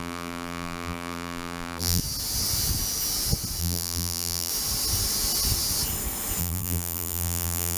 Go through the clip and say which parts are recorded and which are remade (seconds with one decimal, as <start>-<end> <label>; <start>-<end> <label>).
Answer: 0.0-2.0 remade; 2.0-3.6 recorded; 3.6-4.5 remade; 4.5-6.4 recorded; 6.4-7.8 remade